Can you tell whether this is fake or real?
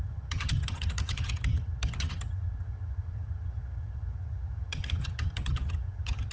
fake